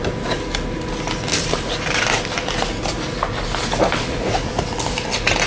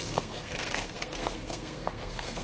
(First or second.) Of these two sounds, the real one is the first